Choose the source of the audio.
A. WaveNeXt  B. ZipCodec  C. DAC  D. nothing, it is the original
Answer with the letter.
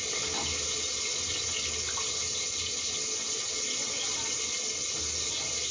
D